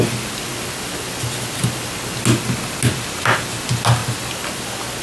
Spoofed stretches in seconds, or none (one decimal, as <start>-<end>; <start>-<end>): none